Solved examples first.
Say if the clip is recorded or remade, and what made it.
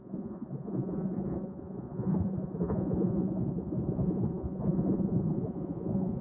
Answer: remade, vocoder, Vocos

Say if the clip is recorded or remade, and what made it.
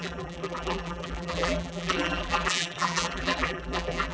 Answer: remade, vocoder, BigVGAN v2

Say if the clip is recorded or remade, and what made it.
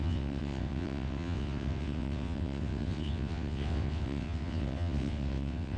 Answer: remade, vocoder, WaveNeXt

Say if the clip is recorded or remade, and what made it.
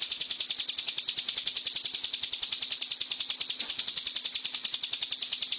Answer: recorded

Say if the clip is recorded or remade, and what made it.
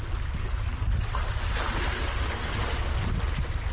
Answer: recorded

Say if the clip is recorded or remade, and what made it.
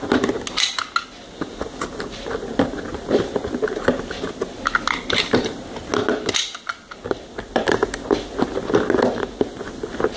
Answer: recorded